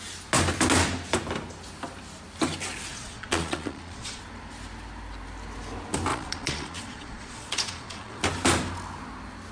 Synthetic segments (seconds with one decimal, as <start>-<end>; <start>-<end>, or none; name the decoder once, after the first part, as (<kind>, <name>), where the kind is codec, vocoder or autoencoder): 2.9-4.2 (vocoder, Vocos); 6.1-8.2